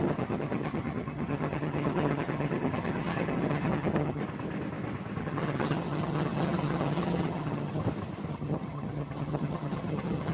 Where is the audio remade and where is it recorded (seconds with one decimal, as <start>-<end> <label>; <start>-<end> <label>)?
0.0-4.2 remade; 4.2-5.2 recorded; 5.2-7.8 remade; 7.8-8.3 recorded; 8.3-10.3 remade